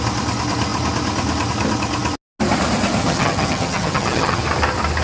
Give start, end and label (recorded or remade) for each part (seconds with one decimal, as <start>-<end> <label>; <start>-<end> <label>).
0.0-3.0 recorded; 3.0-4.4 remade; 4.4-5.0 recorded